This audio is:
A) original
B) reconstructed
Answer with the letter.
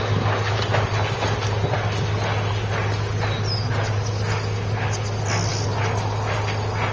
A